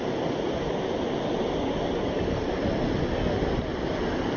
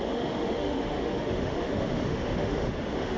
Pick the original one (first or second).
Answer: first